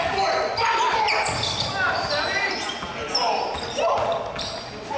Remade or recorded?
recorded